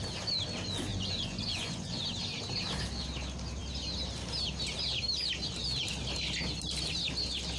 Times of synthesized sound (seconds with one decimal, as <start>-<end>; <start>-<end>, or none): 0.9-2.0